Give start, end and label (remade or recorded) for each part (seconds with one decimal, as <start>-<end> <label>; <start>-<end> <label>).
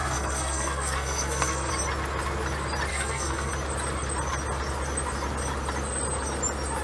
0.0-1.7 remade; 1.7-2.9 recorded; 2.9-3.5 remade; 3.5-6.8 recorded